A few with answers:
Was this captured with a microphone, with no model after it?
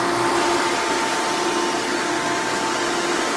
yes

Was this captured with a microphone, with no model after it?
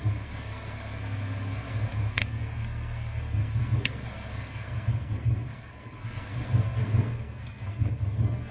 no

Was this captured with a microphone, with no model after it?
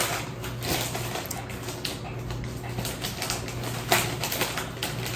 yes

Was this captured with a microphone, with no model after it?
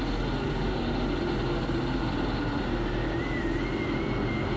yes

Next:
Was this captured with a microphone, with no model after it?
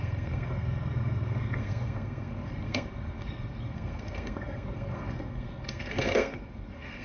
no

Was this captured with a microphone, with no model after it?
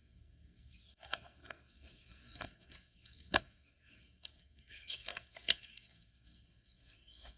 no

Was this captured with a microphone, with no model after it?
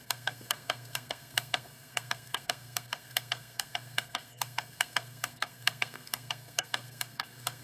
no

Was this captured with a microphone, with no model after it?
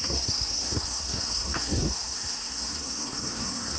no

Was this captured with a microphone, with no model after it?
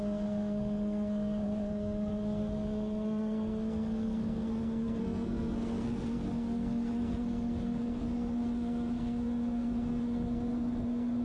no